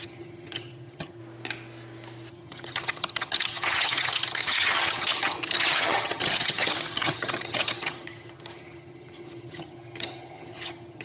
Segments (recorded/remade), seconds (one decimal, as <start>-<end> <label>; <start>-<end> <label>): 0.0-1.2 remade; 1.2-2.3 recorded; 2.3-11.0 remade

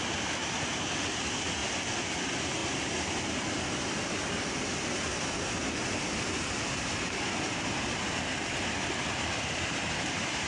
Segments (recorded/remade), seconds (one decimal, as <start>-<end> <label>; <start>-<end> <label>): 0.0-10.5 remade

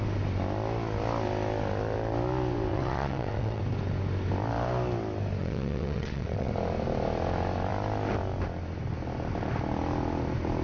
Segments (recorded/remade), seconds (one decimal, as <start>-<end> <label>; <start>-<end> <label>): 0.0-2.7 recorded; 2.7-3.6 remade; 3.6-5.4 recorded; 5.4-6.5 remade; 6.5-10.6 recorded

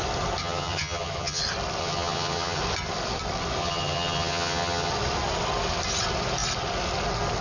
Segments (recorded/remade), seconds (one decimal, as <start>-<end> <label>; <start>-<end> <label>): 0.0-0.4 recorded; 0.4-1.4 remade; 1.4-1.8 recorded; 1.8-2.6 remade; 2.6-3.6 recorded; 3.6-4.9 remade; 4.9-7.4 recorded

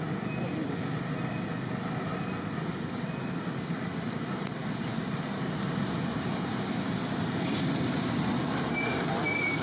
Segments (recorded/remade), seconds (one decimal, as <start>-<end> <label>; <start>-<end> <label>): 0.0-9.6 recorded

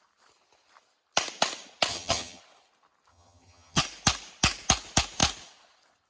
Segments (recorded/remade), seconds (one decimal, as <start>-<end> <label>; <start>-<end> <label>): 0.0-1.9 recorded; 1.9-2.4 remade; 2.4-3.1 recorded; 3.1-3.8 remade; 3.8-6.1 recorded

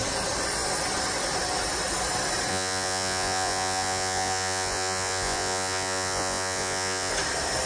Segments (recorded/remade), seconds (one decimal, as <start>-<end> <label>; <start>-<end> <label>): 0.0-2.5 recorded; 2.5-7.1 remade; 7.1-7.7 recorded